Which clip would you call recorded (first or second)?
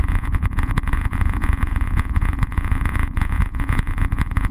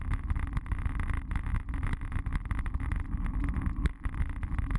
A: second